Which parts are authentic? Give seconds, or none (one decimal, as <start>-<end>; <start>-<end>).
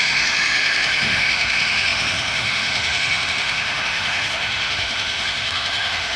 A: none